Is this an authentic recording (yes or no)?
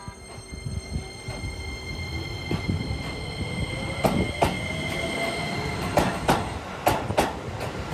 yes